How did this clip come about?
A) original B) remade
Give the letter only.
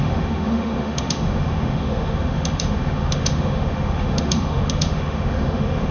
B